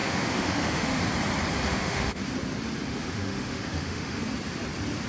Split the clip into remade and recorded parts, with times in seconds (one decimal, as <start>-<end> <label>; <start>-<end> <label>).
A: 0.0-1.0 remade; 1.0-1.7 recorded; 1.7-2.2 remade; 2.2-2.9 recorded; 2.9-4.2 remade; 4.2-5.1 recorded